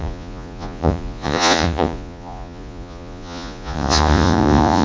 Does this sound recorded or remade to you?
remade